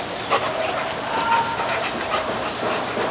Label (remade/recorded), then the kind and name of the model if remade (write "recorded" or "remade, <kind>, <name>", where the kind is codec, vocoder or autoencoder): recorded